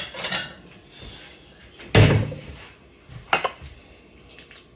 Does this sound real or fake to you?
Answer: real